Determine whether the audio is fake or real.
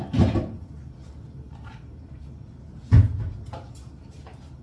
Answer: real